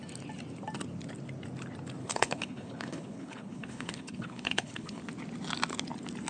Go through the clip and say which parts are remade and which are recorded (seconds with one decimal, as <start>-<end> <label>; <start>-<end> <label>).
0.0-2.0 recorded; 2.0-5.0 remade; 5.0-6.3 recorded